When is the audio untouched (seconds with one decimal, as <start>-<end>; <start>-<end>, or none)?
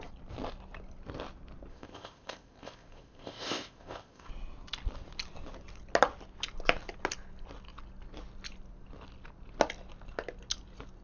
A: 0.0-1.7; 4.3-11.0